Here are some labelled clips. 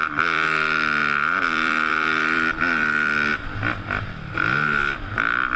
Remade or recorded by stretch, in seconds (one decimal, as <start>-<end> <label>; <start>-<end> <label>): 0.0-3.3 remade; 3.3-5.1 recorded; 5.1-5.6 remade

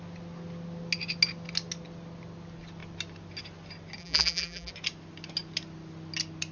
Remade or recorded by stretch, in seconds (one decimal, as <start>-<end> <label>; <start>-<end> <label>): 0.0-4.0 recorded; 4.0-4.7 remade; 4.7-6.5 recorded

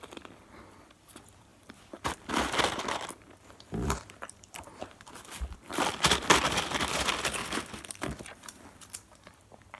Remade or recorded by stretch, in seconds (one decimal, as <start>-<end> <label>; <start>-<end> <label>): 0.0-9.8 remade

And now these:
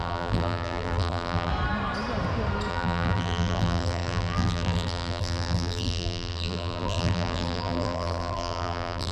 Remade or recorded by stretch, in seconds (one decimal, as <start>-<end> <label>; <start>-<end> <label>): 0.0-1.5 remade; 1.5-2.7 recorded; 2.7-9.1 remade

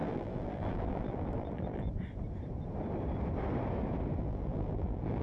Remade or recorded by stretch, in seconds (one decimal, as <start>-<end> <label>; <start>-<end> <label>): 0.0-1.9 remade; 1.9-4.2 recorded; 4.2-5.2 remade

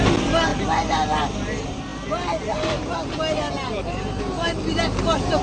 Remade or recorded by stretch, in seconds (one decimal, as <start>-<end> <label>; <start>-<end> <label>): 0.0-5.4 remade

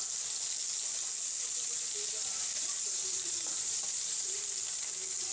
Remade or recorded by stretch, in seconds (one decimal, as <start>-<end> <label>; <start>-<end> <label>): 0.0-2.2 recorded; 2.2-4.4 remade; 4.4-5.3 recorded